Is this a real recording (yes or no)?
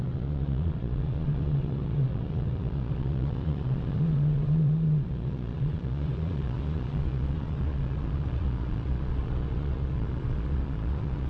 no